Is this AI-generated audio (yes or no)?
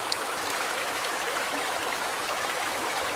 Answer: yes